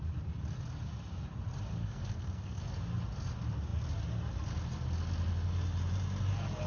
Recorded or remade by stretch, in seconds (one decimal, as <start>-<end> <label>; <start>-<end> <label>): 0.0-1.8 recorded; 1.8-2.6 remade; 2.6-6.7 recorded